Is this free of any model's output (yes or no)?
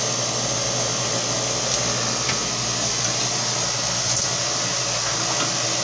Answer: yes